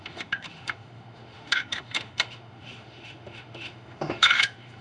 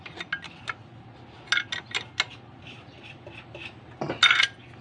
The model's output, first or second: first